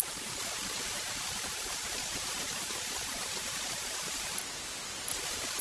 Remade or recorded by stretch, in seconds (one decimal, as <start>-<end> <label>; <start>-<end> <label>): 0.0-4.4 remade; 4.4-5.1 recorded; 5.1-5.6 remade